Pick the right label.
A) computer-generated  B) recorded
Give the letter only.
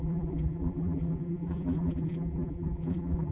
A